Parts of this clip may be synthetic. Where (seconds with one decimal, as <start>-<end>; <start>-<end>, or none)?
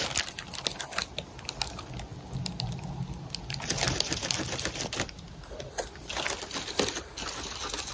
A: none